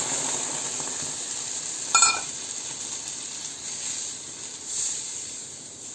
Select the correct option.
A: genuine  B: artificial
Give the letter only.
A